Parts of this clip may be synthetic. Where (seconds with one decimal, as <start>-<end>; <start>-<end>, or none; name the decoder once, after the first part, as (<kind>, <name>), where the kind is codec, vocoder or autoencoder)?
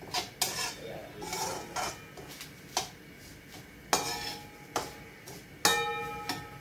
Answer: none